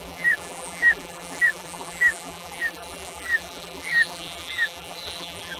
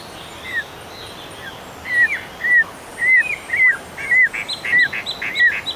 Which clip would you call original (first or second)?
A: second